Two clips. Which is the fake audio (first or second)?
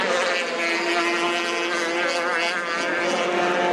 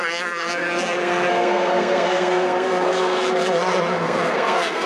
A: second